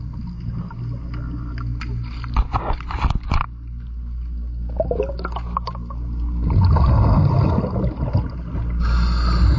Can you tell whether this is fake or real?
real